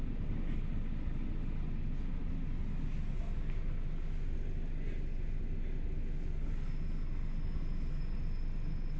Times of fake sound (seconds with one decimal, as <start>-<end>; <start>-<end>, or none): none